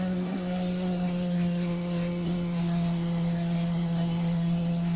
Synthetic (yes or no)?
yes